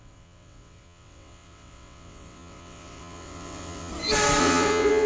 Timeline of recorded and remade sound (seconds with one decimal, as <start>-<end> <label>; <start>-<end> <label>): 0.0-3.9 remade; 3.9-4.4 recorded; 4.4-5.1 remade